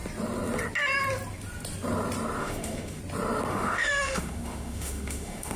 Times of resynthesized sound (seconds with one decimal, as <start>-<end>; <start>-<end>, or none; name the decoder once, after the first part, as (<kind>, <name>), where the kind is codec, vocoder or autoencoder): 2.4-3.0 (autoencoder, DAC-VAE); 3.5-5.6